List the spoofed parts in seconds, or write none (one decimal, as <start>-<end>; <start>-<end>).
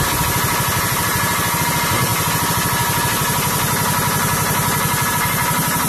none